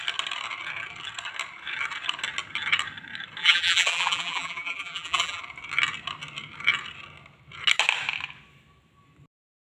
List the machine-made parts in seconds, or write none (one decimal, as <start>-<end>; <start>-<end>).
3.4-5.4

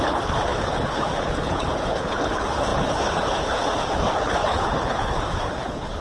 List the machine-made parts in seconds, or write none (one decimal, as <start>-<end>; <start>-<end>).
0.0-6.0